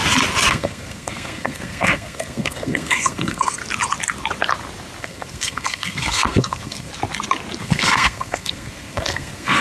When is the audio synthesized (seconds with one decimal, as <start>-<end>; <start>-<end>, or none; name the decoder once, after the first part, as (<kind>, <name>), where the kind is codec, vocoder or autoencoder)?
0.5-3.6 (codec, SNAC); 5.0-6.9; 7.6-9.6